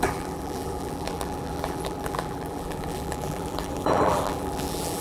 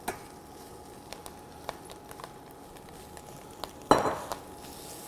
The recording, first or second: second